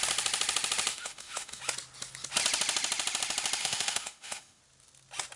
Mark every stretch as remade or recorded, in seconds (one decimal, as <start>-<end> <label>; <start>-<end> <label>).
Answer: 0.0-0.9 recorded; 0.9-1.6 remade; 1.6-3.6 recorded; 3.6-4.6 remade; 4.6-5.4 recorded